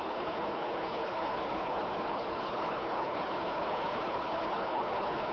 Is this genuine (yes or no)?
no